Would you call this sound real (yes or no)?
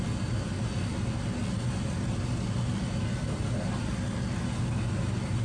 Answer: yes